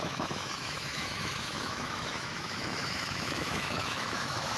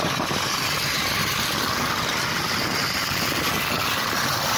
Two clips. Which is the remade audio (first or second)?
first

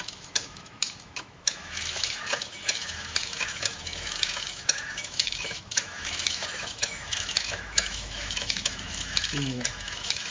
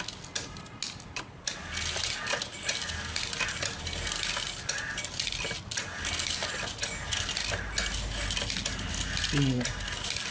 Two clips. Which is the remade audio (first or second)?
first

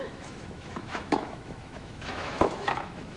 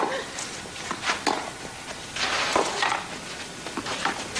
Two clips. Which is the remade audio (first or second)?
first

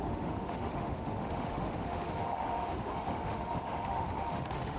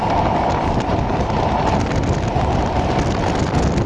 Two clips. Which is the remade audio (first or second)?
first